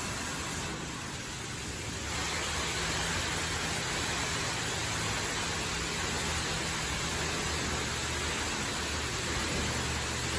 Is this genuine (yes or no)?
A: yes